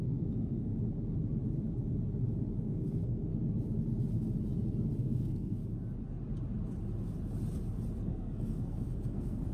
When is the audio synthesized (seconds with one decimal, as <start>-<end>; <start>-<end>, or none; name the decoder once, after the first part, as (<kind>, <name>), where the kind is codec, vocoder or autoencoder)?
0.0-0.7 (codec, SNAC); 2.6-3.3; 5.0-5.6; 8.0-9.5